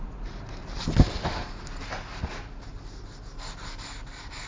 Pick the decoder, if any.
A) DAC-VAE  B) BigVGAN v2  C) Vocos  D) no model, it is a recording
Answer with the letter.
D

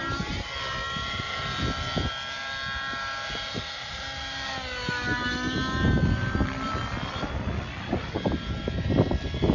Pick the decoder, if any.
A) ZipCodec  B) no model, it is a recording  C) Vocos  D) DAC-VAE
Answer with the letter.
B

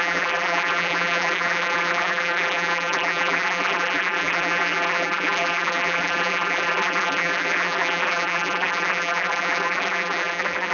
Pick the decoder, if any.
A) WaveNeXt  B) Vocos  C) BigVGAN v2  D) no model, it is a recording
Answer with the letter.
C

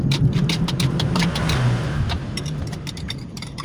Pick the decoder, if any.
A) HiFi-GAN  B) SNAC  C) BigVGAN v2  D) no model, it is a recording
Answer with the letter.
C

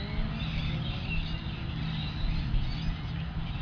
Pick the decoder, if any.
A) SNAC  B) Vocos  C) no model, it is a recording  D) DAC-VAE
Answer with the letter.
C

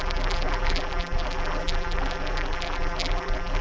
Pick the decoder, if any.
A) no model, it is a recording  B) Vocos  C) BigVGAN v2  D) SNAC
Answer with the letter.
C